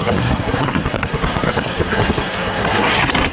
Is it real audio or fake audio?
fake